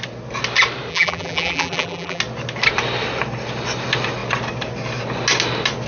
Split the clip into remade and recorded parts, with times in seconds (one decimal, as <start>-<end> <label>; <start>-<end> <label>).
0.0-0.9 recorded; 0.9-2.2 remade; 2.2-5.9 recorded